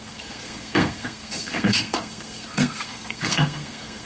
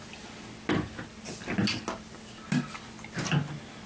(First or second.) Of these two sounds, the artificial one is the first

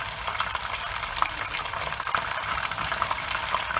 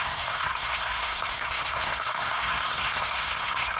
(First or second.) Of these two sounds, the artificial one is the second